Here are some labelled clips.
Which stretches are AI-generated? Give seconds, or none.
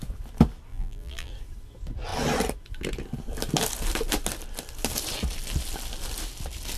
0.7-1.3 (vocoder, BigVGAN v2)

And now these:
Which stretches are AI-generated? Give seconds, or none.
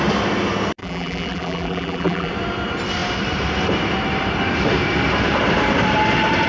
0.8-2.3 (vocoder, BigVGAN v2)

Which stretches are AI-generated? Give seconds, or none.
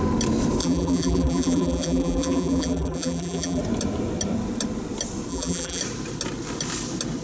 0.6-3.6 (vocoder, BigVGAN v2); 5.3-5.8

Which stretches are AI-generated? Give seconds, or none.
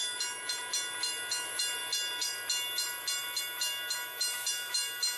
none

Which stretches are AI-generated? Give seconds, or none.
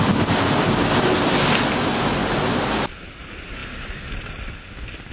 2.2-2.9 (vocoder, BigVGAN v2)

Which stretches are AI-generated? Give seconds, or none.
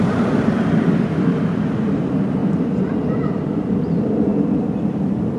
0.0-4.3 (vocoder, BigVGAN v2); 5.0-5.4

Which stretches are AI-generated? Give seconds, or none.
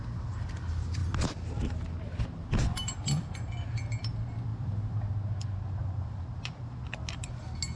4.5-5.1 (vocoder, BigVGAN v2); 5.8-7.3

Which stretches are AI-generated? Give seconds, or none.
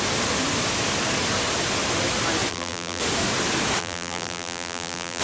2.5-3.0 (vocoder, BigVGAN v2); 3.8-5.2